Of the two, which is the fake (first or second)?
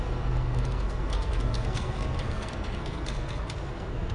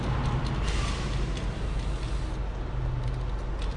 first